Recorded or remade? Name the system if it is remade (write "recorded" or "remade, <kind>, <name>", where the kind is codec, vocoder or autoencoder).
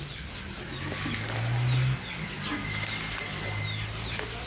recorded